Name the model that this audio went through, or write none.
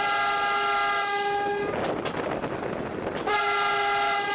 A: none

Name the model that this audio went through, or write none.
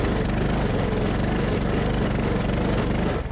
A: none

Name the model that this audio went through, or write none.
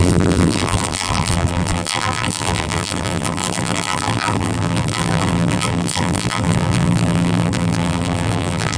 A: vocoder, BigVGAN v2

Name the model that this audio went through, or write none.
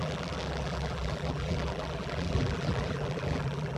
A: vocoder, BigVGAN v2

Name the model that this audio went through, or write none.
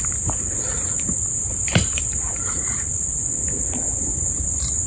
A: vocoder, BigVGAN v2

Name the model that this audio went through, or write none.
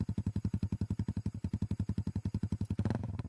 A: vocoder, BigVGAN v2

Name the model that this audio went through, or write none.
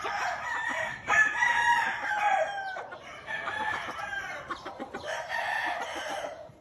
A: vocoder, BigVGAN v2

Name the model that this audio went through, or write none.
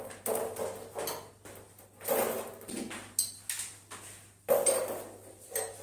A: none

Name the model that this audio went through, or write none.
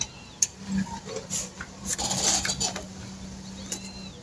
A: none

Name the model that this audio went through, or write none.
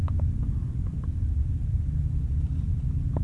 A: vocoder, BigVGAN v2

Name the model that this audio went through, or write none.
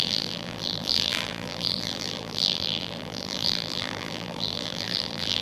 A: vocoder, BigVGAN v2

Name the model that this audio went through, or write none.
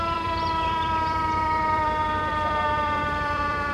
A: vocoder, BigVGAN v2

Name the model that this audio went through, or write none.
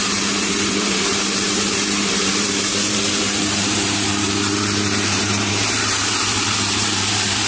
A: vocoder, BigVGAN v2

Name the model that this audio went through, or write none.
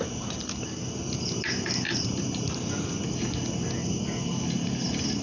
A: none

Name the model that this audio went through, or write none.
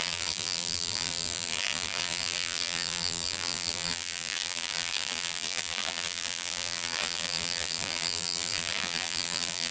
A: vocoder, BigVGAN v2